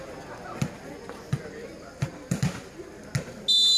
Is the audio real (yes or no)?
yes